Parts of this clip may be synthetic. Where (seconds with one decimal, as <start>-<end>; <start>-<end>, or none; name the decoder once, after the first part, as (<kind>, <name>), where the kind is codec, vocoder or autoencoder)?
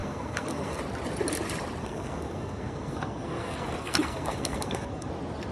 0.0-0.8 (codec, SNAC); 1.8-5.1